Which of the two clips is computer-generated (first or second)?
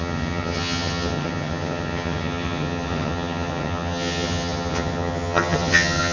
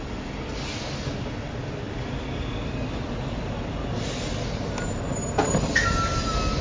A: first